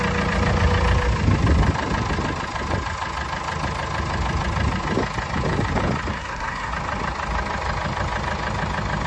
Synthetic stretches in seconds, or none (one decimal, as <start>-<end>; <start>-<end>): 6.1-6.7